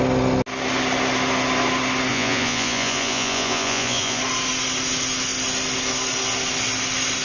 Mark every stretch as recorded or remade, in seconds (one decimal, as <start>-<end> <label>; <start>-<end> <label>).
0.0-2.1 recorded; 2.1-4.2 remade; 4.2-7.2 recorded